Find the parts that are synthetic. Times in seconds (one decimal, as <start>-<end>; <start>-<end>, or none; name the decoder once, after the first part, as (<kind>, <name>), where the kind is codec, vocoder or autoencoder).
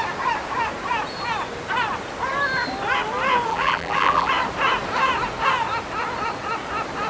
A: 3.5-4.3 (vocoder, BigVGAN v2)